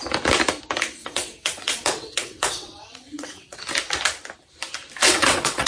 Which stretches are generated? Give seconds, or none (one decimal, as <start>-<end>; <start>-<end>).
1.0-3.6; 5.0-5.7